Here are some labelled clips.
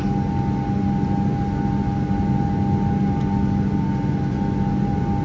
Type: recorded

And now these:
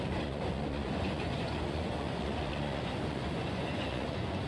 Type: remade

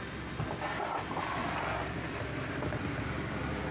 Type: remade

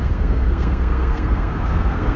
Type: remade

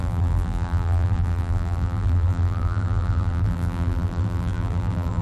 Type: remade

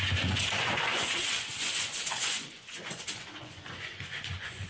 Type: remade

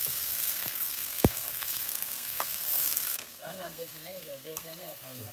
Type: remade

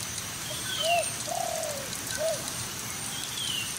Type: remade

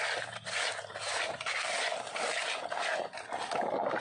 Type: recorded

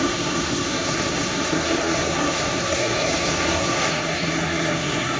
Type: remade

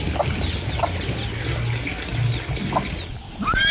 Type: recorded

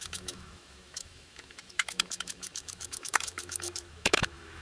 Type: remade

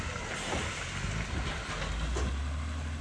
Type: recorded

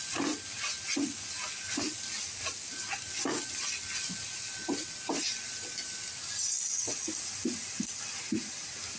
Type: recorded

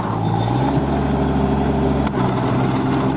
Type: recorded